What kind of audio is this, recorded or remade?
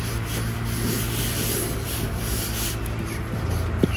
recorded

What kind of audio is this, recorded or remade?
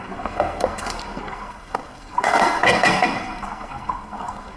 remade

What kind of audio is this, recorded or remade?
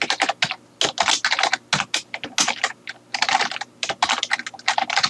recorded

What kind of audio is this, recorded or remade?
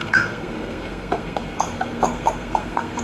remade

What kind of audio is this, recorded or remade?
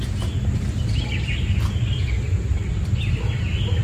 recorded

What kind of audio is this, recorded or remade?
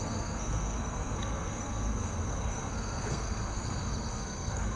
remade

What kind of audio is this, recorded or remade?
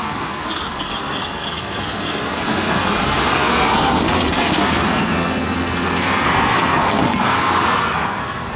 remade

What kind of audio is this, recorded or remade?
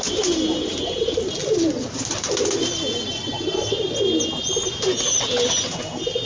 recorded